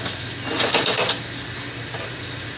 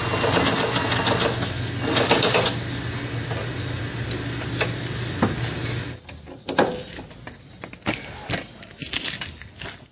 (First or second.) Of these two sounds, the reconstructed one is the first